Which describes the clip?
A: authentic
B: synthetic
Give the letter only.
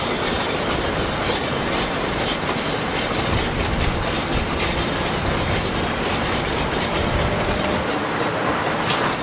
A